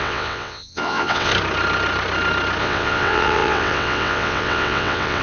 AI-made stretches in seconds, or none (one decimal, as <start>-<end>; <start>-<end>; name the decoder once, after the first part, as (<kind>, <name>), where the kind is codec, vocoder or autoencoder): 0.0-1.3 (vocoder, WaveNeXt); 2.6-5.2